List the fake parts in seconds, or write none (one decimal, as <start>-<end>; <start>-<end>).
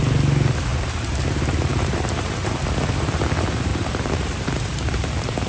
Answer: 0.7-2.5; 3.7-5.5